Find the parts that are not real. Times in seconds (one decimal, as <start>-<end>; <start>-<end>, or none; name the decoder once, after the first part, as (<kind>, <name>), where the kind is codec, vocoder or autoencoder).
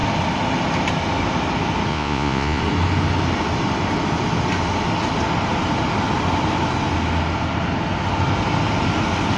1.9-2.6 (vocoder, Vocos)